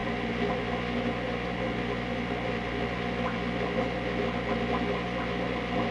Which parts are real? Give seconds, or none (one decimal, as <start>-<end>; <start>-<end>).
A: 0.0-5.9